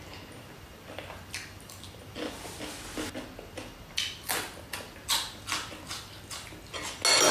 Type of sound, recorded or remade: recorded